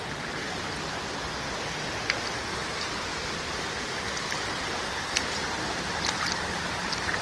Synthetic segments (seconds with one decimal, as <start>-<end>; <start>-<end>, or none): none